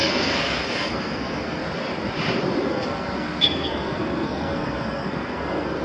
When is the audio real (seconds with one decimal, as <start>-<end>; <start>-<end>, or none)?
1.6-2.7

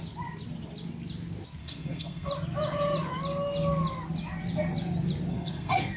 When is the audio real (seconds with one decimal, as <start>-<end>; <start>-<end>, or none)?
0.0-1.6; 2.3-5.3